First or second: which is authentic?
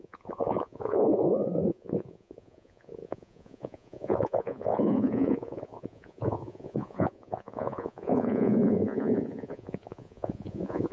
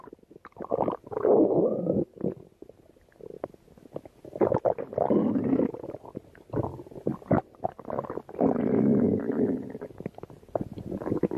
second